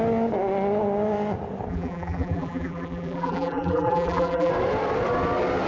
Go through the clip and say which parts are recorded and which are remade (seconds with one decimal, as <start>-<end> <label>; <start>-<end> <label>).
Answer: 0.0-1.7 recorded; 1.7-4.5 remade; 4.5-5.7 recorded